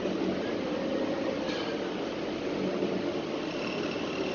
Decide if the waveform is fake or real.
real